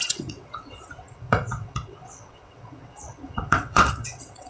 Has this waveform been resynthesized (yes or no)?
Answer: yes